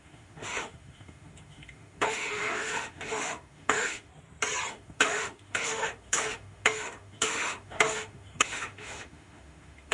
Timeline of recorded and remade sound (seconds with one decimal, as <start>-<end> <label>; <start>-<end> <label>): 0.0-4.1 remade; 4.1-4.7 recorded; 4.7-9.9 remade